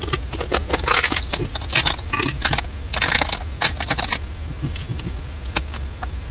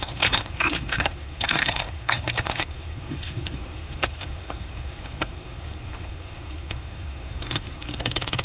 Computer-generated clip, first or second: second